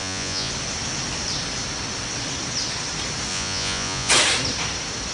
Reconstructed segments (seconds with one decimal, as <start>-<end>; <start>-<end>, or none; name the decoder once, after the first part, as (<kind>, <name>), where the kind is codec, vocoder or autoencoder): 0.0-0.5 (vocoder, Vocos); 3.3-4.1